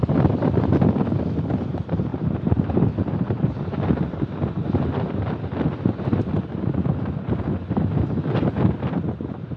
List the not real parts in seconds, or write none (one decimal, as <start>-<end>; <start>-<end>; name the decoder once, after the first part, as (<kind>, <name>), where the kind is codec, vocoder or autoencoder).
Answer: 2.1-3.5 (vocoder, BigVGAN v2)